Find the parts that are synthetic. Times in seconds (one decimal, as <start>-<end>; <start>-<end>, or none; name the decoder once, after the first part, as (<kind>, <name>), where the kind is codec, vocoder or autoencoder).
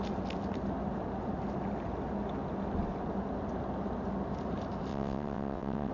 4.9-5.9 (vocoder, WaveNeXt)